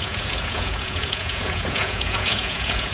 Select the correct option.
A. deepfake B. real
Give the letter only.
A